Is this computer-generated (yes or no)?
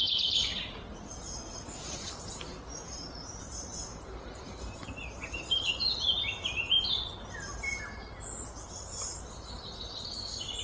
no